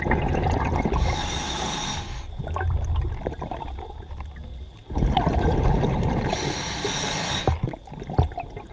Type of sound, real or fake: real